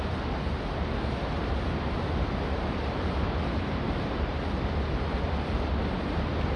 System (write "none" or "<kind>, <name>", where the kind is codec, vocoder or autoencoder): none